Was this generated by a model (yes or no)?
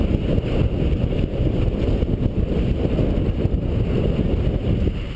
no